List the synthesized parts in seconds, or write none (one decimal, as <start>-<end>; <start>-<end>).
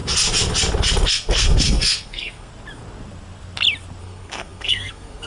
1.1-2.5; 4.0-5.3